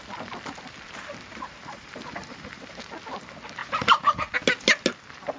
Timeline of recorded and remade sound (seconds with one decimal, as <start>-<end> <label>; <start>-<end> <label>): 0.0-1.3 recorded; 1.3-2.9 remade; 2.9-3.6 recorded; 3.6-4.3 remade; 4.3-5.4 recorded